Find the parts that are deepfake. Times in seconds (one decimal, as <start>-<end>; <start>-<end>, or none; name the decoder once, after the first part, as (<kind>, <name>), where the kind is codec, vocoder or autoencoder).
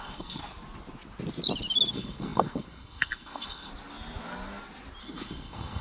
0.0-0.4 (codec, SNAC); 1.9-3.7; 5.0-5.8